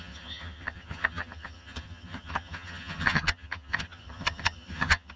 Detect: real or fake fake